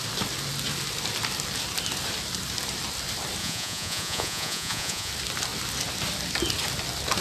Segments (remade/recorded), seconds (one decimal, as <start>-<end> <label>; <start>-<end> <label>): 0.0-3.4 recorded; 3.4-5.1 remade; 5.1-7.2 recorded